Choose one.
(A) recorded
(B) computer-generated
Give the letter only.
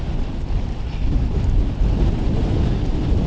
A